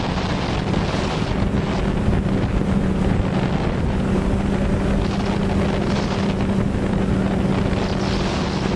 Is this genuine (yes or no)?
yes